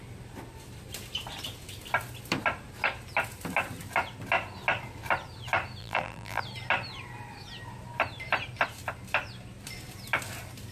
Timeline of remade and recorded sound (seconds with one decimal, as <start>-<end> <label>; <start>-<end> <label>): 0.0-5.8 recorded; 5.8-6.4 remade; 6.4-10.7 recorded